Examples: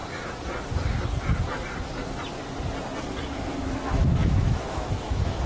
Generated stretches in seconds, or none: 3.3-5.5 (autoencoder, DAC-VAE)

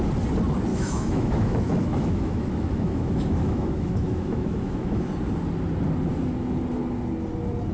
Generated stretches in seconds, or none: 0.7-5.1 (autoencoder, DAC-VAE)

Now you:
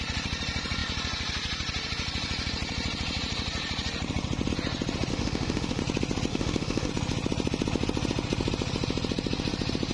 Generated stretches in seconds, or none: 5.1-5.8 (autoencoder, DAC-VAE); 6.3-6.9